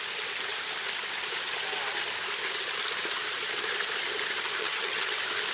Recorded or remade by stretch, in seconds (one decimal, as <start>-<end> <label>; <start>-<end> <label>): 0.0-4.6 recorded; 4.6-5.1 remade; 5.1-5.5 recorded